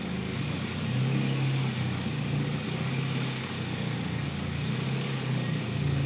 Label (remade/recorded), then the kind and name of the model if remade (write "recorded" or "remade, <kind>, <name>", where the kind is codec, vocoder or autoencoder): remade, codec, DAC